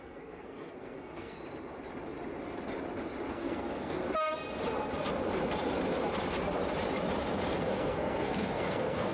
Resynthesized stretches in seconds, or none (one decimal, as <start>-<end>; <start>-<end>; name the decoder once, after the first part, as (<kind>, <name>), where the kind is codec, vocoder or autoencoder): 0.0-1.4 (codec, SNAC); 3.3-4.0; 7.6-9.1